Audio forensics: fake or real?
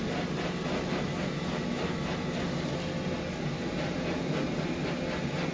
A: real